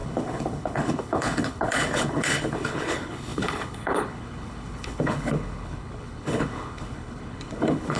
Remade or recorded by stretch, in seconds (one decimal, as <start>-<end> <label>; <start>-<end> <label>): 0.0-8.0 remade